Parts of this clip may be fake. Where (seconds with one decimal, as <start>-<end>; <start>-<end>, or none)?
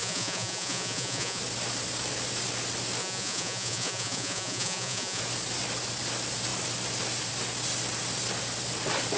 0.0-1.4; 3.0-5.2